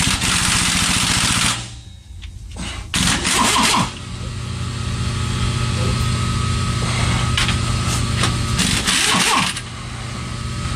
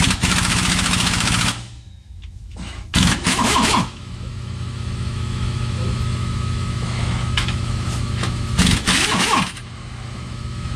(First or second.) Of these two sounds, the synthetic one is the second